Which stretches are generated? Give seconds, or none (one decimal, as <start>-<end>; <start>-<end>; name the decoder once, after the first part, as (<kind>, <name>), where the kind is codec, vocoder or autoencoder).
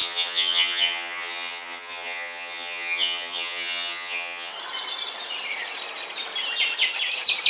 0.0-4.5 (vocoder, HiFi-GAN)